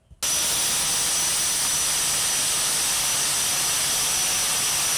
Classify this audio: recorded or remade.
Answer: recorded